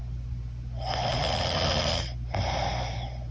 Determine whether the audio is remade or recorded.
recorded